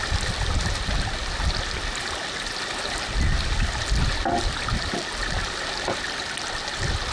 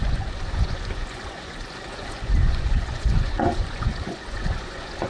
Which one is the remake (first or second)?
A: second